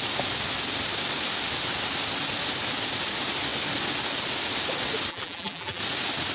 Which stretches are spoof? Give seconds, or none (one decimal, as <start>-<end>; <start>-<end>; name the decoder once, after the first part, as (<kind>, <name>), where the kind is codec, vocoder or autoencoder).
5.1-5.8 (vocoder, BigVGAN v2)